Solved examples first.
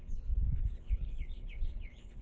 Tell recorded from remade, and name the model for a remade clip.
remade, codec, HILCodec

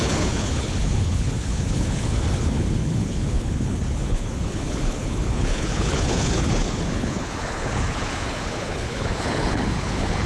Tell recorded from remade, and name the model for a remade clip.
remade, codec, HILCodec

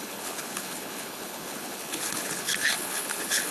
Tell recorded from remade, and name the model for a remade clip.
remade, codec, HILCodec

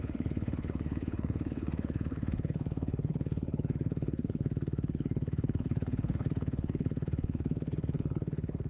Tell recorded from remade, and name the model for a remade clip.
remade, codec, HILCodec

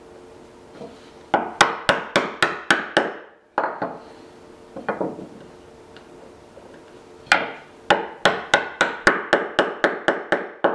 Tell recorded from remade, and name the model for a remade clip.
recorded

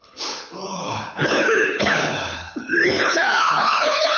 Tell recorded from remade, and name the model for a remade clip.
remade, codec, HILCodec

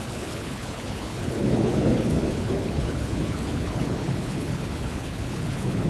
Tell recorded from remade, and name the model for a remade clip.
remade, codec, HILCodec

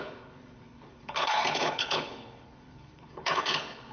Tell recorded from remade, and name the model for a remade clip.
remade, codec, HILCodec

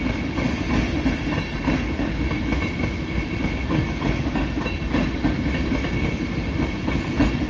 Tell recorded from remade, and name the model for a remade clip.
recorded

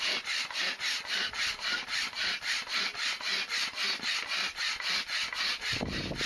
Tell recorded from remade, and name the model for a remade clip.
recorded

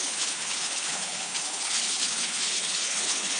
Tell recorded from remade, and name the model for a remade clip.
remade, codec, HILCodec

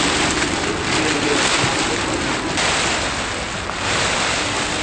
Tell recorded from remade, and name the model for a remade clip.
recorded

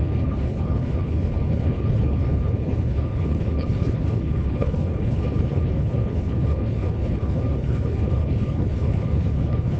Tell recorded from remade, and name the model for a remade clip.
remade, codec, HILCodec